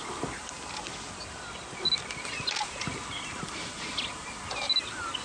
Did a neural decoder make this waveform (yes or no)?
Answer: no